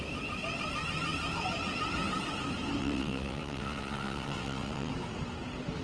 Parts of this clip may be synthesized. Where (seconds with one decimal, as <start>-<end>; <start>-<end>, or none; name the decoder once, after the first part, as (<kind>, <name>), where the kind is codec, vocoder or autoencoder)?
2.8-4.9 (vocoder, WaveNeXt)